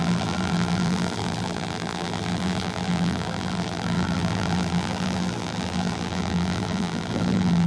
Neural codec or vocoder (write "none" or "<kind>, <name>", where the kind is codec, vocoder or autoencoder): vocoder, BigVGAN v2